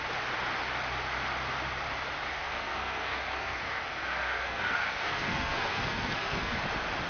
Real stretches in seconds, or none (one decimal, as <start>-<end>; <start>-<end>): 0.0-2.3; 6.6-7.1